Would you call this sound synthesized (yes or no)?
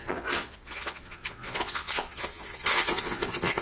yes